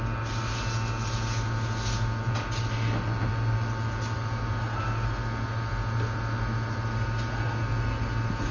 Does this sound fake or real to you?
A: real